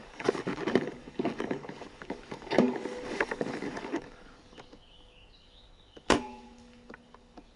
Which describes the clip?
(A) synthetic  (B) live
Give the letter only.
A